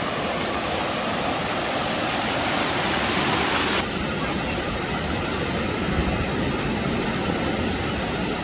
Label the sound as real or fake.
real